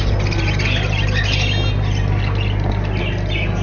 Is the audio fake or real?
real